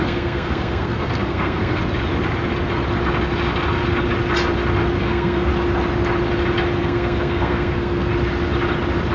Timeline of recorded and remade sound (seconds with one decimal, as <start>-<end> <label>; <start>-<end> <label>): 0.0-1.8 remade; 1.8-5.0 recorded; 5.0-5.5 remade; 5.5-6.8 recorded; 6.8-8.1 remade; 8.1-9.1 recorded